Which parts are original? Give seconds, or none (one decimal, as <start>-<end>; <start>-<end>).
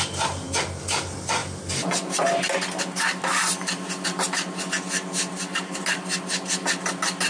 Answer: 0.0-7.3